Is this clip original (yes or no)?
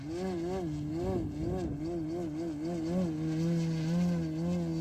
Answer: yes